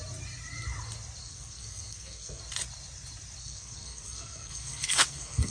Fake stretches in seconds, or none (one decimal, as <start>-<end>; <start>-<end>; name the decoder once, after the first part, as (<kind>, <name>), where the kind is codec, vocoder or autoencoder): 1.2-2.4 (codec, SNAC); 3.4-5.5